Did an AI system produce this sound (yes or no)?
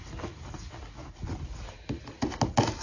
no